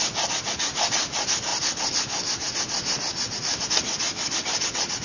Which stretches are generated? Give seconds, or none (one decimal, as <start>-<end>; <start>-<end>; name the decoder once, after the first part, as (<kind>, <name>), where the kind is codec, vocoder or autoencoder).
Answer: none